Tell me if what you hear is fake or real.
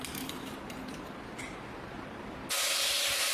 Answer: fake